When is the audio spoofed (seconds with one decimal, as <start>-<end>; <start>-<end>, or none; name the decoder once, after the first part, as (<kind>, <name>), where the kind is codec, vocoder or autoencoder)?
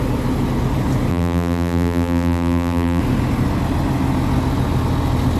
1.1-3.0 (vocoder, BigVGAN v2)